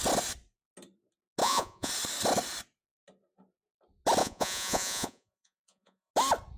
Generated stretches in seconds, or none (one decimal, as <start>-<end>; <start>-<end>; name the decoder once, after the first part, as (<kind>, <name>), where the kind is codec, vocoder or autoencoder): 1.4-1.9 (vocoder, Vocos); 4.2-6.1